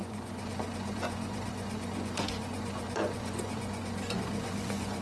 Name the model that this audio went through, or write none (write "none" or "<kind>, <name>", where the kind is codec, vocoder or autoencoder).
vocoder, Vocos